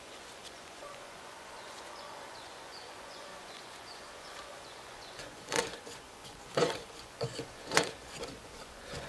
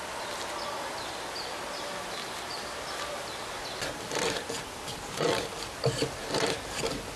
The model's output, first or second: first